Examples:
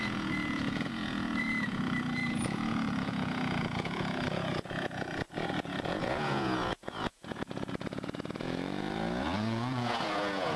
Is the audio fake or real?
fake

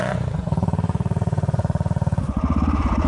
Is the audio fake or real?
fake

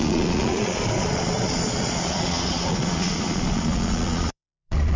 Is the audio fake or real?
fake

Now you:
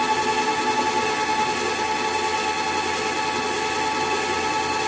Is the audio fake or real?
real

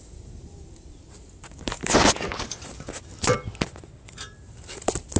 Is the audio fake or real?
real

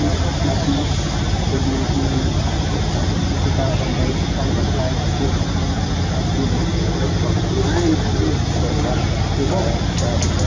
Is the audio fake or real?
real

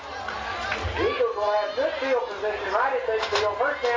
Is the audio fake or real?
real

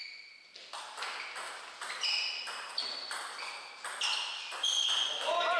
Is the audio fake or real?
real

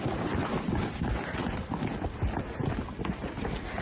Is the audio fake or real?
real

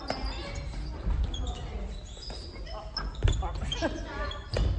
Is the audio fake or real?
real